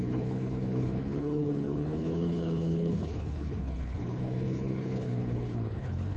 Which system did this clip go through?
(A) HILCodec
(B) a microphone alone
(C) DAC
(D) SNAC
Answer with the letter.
A